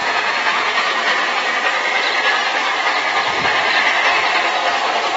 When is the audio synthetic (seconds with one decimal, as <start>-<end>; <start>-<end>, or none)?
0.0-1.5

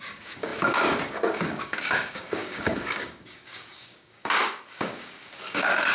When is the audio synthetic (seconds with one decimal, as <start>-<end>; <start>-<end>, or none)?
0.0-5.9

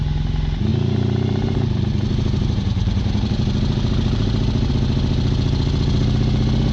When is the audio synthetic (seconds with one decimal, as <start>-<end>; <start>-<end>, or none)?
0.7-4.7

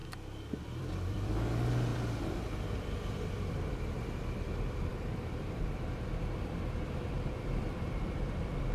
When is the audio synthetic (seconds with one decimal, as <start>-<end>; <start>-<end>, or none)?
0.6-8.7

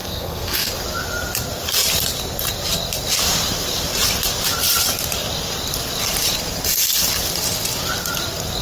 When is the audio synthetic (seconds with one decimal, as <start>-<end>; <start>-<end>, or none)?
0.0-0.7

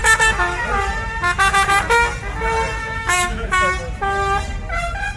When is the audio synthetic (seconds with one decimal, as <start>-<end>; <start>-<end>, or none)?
2.8-3.5

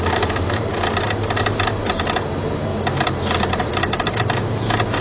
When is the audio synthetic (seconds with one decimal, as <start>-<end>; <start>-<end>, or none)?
0.0-0.7; 1.4-2.7; 3.4-5.0